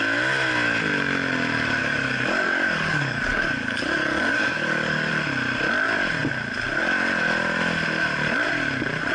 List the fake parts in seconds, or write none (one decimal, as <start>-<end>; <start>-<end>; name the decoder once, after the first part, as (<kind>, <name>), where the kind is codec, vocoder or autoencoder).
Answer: 1.8-5.1 (codec, DAC)